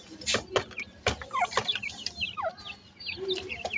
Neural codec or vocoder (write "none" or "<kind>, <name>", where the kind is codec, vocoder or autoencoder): none